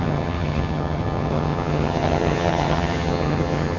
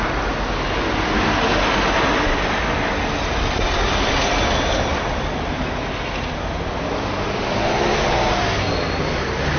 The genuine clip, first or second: second